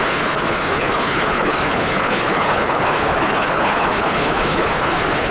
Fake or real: fake